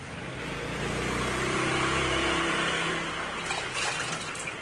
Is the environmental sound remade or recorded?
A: recorded